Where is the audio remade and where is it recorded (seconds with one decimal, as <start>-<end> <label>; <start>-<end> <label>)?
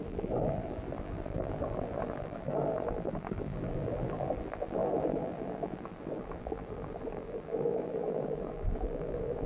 0.0-9.5 remade